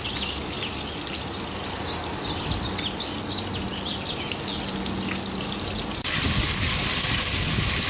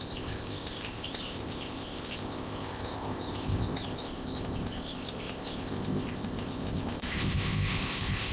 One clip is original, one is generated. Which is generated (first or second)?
second